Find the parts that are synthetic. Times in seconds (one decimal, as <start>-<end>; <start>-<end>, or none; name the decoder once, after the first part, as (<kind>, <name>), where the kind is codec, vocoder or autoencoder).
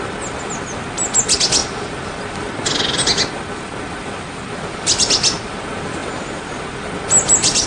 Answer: none